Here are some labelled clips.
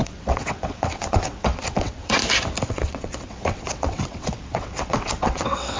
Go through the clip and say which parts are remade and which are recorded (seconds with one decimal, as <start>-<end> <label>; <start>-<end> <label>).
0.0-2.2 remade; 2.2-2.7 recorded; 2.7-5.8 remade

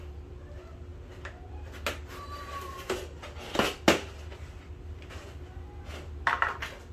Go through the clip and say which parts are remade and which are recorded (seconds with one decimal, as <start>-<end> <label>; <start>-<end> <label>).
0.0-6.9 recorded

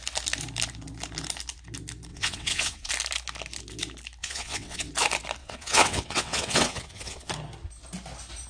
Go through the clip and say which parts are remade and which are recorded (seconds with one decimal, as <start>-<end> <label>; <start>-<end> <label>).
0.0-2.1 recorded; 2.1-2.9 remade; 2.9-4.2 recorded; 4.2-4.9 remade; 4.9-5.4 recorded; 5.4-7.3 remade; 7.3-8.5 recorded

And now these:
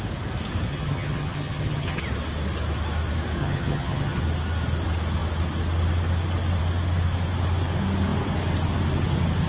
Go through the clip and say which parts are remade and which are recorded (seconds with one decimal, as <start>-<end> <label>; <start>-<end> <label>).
0.0-0.7 recorded; 0.7-2.0 remade; 2.0-3.4 recorded; 3.4-4.2 remade; 4.2-9.5 recorded